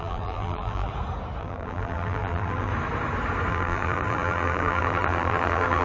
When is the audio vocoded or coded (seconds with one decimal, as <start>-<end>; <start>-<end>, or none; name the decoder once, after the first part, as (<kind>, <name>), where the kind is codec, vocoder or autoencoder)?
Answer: 0.0-0.9 (vocoder, BigVGAN v2); 1.4-2.7; 3.5-5.8